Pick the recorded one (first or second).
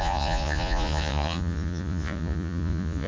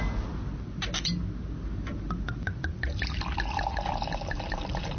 second